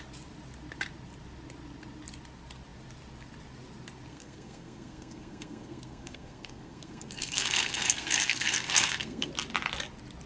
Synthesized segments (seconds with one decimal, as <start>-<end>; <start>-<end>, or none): 4.1-9.3